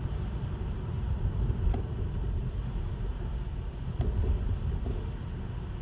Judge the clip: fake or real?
real